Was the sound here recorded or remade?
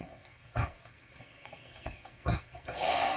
remade